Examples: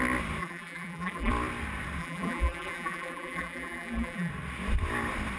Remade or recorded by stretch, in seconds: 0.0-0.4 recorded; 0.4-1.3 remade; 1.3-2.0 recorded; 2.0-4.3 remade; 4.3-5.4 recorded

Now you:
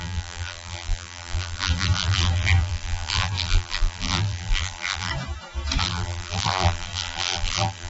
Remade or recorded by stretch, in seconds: 0.0-5.1 remade; 5.1-5.8 recorded; 5.8-7.9 remade

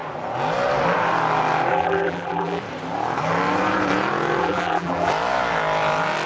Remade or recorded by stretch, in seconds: 0.0-1.7 recorded; 1.7-2.6 remade; 2.6-4.4 recorded; 4.4-5.1 remade; 5.1-6.3 recorded

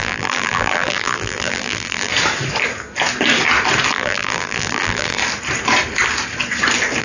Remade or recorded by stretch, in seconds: 0.0-2.1 remade; 2.1-3.9 recorded; 3.9-5.2 remade; 5.2-7.0 recorded

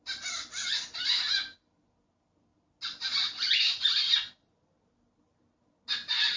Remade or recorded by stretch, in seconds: 0.0-6.4 recorded